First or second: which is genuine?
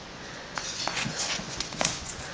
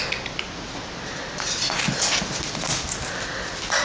second